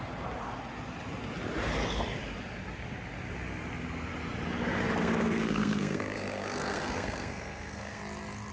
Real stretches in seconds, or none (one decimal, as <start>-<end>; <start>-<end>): 0.0-5.0; 8.0-8.5